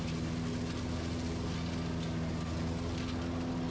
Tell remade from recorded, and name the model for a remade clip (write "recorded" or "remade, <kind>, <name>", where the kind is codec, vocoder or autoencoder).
recorded